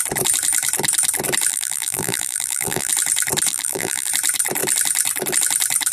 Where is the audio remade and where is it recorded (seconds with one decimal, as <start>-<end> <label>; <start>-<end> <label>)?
0.0-1.5 recorded; 1.5-2.9 remade; 2.9-3.5 recorded; 3.5-4.1 remade; 4.1-5.9 recorded

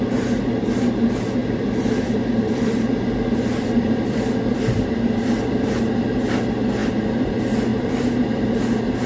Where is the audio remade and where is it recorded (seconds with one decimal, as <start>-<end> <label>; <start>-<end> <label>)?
0.0-1.4 recorded; 1.4-5.9 remade; 5.9-6.8 recorded; 6.8-7.3 remade; 7.3-7.7 recorded; 7.7-8.5 remade; 8.5-9.1 recorded